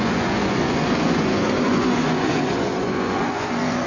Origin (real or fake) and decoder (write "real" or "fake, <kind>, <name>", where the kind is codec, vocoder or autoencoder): fake, vocoder, Vocos